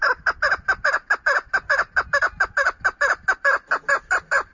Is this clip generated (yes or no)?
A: no